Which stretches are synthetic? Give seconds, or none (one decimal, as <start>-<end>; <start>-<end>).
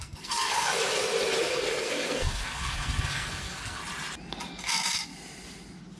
0.0-0.7; 1.4-3.8; 4.6-5.1